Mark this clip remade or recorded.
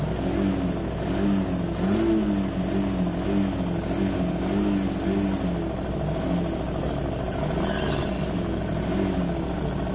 recorded